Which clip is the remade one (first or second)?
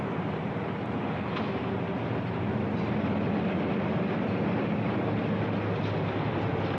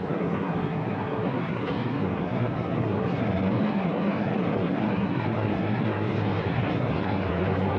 second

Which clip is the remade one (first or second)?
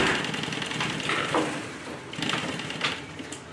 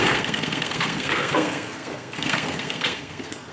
second